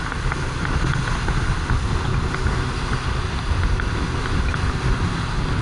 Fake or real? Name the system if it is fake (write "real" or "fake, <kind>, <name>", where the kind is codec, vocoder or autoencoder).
real